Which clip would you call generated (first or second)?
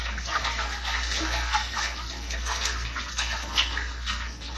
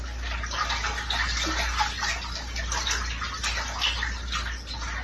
first